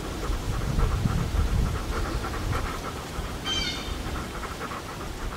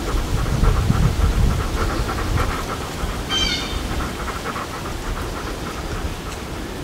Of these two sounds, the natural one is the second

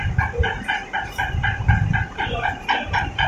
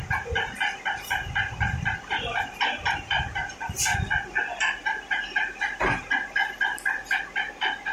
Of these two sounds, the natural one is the second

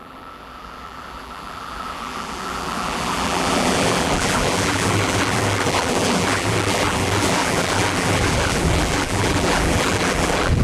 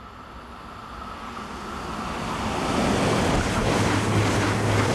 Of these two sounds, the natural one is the second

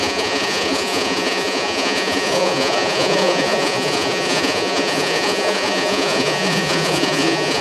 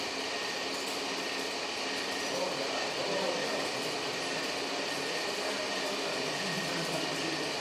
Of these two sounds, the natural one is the second